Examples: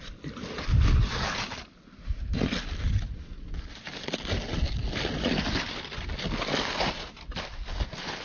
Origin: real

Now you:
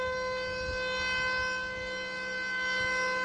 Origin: real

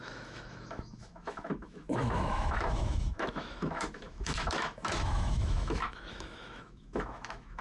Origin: fake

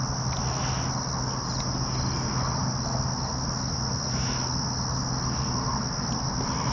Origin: real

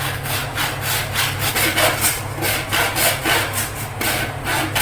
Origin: real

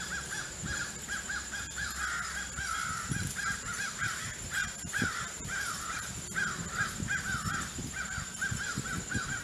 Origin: real